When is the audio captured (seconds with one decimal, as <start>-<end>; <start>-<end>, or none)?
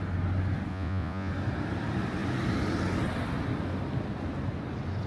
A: 0.0-0.7; 1.3-5.1